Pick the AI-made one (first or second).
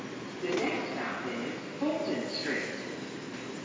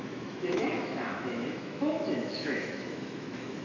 second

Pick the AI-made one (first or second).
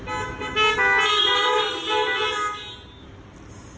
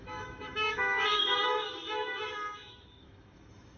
second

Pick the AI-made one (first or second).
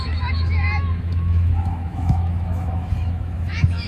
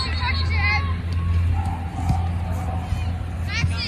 first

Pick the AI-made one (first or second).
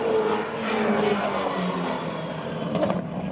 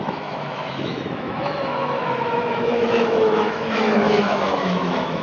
second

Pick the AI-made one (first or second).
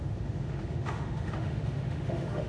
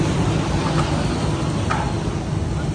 first